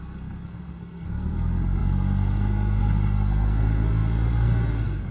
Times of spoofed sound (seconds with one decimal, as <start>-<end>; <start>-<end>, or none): 0.0-5.1